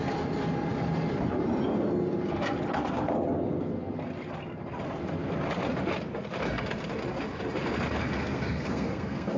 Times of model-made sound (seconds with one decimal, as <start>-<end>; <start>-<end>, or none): 8.0-9.4